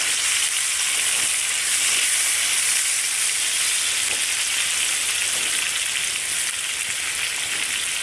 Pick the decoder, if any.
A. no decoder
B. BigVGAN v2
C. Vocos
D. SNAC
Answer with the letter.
A